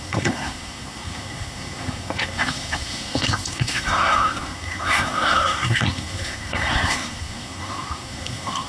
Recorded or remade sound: remade